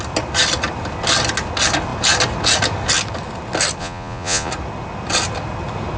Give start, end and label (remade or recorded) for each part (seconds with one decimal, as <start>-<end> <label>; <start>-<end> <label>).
0.0-3.8 recorded; 3.8-4.5 remade; 4.5-6.0 recorded